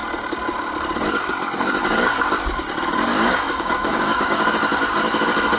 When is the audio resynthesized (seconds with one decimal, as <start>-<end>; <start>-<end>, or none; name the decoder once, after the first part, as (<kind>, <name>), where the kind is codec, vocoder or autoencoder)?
3.1-4.4 (codec, DAC)